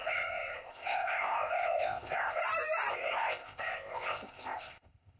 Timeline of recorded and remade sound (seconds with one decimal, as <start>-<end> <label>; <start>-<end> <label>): 0.0-2.4 remade; 2.4-2.9 recorded; 2.9-5.2 remade